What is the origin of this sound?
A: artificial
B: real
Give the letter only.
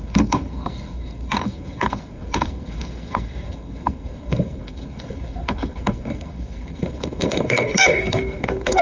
A